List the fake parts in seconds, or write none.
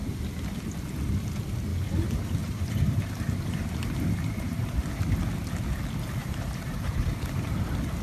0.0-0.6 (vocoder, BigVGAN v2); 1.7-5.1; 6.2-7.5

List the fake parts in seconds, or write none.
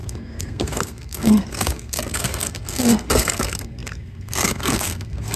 0.0-5.4 (codec, SNAC)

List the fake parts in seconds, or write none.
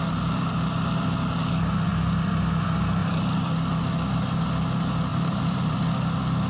5.1-5.8 (vocoder, BigVGAN v2)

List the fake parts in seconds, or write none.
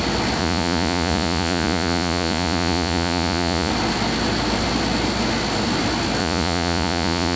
0.4-3.7 (vocoder, Vocos); 6.2-7.4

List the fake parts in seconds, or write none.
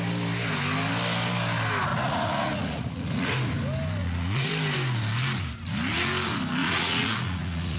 1.9-3.3 (vocoder, Vocos); 4.0-4.5; 6.6-7.8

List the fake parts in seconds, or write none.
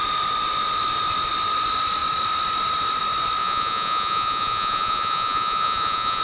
3.4-6.2 (vocoder, Vocos)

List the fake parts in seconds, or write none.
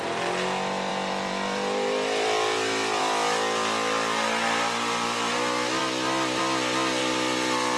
0.9-3.0 (vocoder, BigVGAN v2); 5.8-6.4; 7.0-7.8